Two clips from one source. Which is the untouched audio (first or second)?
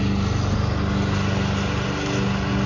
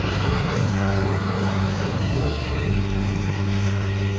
first